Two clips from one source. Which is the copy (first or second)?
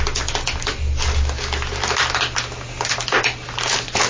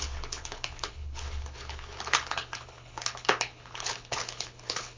second